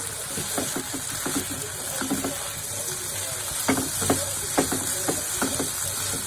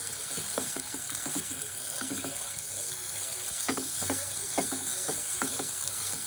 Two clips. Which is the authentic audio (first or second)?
first